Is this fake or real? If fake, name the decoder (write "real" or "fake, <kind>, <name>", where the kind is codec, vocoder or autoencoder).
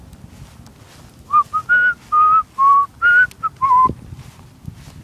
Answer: real